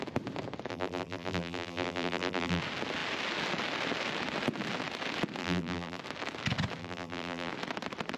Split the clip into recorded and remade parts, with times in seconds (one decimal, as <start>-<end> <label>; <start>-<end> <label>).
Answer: 0.0-0.7 recorded; 0.7-2.6 remade; 2.6-5.4 recorded; 5.4-6.0 remade; 6.0-6.8 recorded; 6.8-7.5 remade; 7.5-8.2 recorded